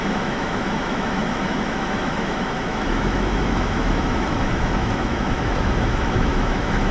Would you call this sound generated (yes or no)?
yes